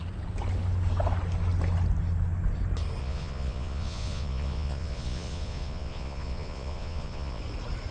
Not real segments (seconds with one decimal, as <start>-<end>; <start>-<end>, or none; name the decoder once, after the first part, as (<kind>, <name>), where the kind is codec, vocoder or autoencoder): 3.0-7.4 (vocoder, Vocos)